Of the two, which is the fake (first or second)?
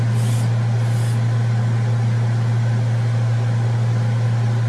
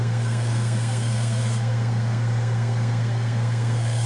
second